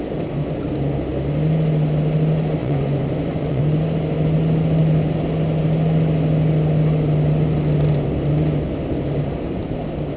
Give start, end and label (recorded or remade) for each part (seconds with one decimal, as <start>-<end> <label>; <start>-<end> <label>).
0.0-2.6 recorded; 2.6-3.6 remade; 3.6-10.2 recorded